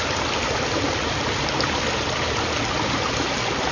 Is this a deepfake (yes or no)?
no